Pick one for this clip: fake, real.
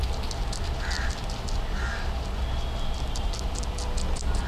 real